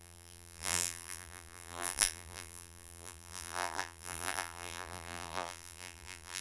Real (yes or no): no